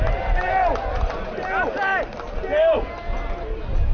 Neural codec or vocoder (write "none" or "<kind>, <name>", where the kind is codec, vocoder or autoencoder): none